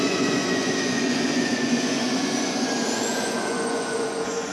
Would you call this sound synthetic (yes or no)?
yes